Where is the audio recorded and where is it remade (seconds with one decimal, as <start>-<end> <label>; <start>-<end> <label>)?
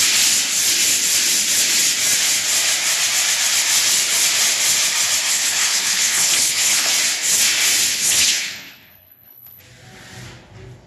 0.0-5.3 recorded; 5.3-6.9 remade; 6.9-7.9 recorded; 7.9-9.6 remade; 9.6-10.9 recorded